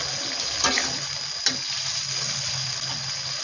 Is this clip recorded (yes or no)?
yes